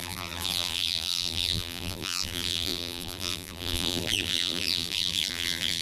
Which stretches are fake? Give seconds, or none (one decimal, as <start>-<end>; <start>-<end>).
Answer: 0.0-5.8